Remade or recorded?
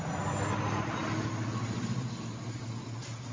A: recorded